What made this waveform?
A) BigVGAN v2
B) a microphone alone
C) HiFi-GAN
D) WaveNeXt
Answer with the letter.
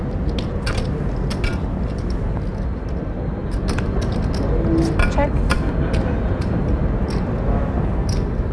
B